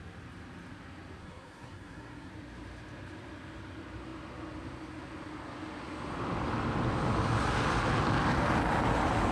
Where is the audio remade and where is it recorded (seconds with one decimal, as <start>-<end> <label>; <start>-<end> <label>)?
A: 0.0-1.2 recorded; 1.2-2.3 remade; 2.3-9.3 recorded